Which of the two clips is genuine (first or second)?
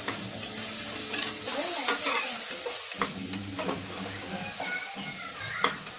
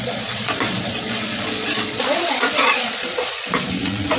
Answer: first